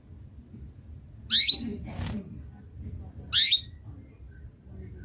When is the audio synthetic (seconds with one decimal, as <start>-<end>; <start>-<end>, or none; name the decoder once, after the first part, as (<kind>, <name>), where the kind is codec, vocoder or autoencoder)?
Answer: none